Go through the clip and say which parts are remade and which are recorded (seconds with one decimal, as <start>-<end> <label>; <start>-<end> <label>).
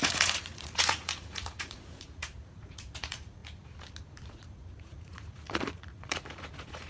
0.0-3.4 remade; 3.4-4.3 recorded; 4.3-6.9 remade